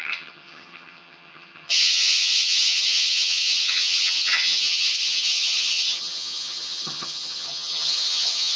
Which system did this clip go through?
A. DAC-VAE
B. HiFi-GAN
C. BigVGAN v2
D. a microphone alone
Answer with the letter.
B